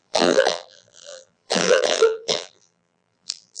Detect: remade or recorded remade